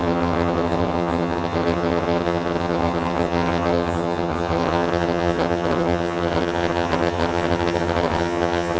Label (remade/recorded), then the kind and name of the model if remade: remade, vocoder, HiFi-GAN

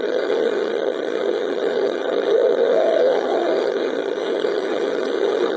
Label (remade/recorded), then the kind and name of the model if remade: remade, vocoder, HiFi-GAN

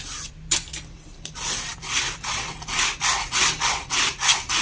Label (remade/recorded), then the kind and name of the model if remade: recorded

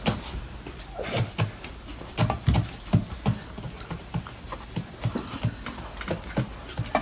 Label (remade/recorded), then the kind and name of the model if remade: recorded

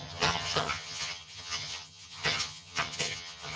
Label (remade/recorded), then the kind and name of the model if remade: remade, vocoder, HiFi-GAN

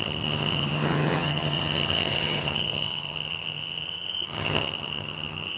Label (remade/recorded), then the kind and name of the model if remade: remade, vocoder, HiFi-GAN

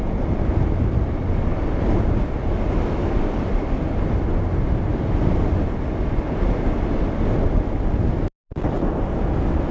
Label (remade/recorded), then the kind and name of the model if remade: recorded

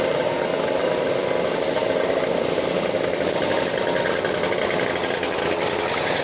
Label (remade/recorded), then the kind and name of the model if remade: recorded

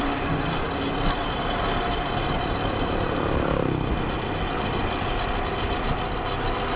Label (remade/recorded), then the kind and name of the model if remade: recorded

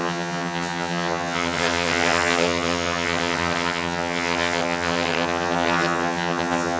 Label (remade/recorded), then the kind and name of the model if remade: remade, vocoder, HiFi-GAN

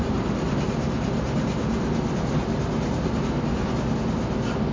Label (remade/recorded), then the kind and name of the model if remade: recorded